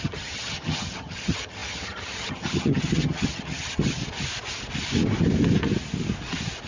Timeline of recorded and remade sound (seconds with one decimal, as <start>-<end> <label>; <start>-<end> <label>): 0.0-4.0 remade; 4.0-6.7 recorded